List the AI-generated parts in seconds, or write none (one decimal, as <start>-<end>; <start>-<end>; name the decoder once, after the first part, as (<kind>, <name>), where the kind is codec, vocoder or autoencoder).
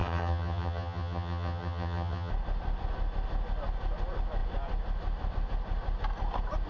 0.0-2.3 (vocoder, HiFi-GAN)